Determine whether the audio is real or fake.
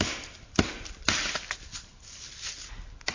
real